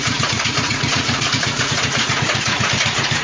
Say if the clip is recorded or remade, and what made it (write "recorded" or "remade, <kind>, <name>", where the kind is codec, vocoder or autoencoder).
remade, vocoder, Vocos